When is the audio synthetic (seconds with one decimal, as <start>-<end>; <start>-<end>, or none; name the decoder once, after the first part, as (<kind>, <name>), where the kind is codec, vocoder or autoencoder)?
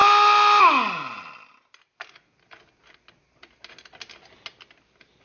none